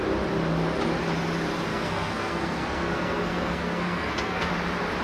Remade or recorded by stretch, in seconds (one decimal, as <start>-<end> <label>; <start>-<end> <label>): 0.0-1.7 recorded; 1.7-4.5 remade; 4.5-5.0 recorded